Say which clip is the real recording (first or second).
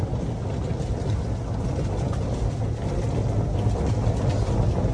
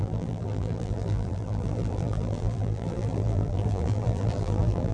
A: first